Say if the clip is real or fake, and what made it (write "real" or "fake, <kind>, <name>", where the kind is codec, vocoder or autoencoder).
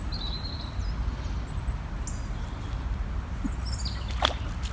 real